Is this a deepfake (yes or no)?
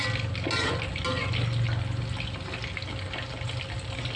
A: no